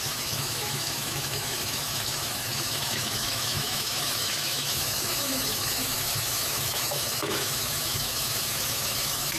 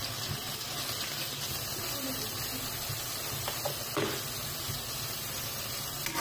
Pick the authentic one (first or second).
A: second